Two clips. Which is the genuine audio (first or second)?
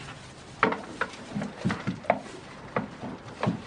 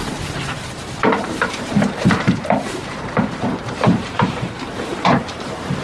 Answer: first